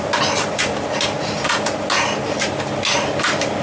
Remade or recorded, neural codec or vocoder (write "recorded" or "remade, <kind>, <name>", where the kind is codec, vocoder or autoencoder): recorded